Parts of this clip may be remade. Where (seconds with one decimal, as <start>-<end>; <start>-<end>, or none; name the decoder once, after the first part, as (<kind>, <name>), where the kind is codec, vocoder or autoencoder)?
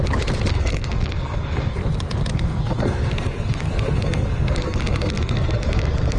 0.5-1.8 (codec, SNAC); 2.3-6.2